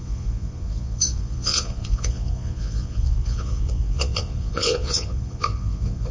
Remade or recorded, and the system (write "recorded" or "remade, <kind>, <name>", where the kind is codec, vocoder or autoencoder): remade, vocoder, Vocos